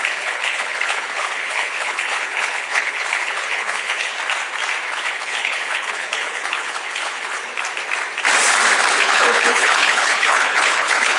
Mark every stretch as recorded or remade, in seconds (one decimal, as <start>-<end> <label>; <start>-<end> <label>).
0.0-4.1 remade; 4.1-4.9 recorded; 4.9-7.5 remade; 7.5-8.9 recorded; 8.9-11.2 remade